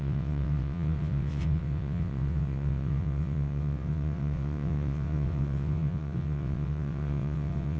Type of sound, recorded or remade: remade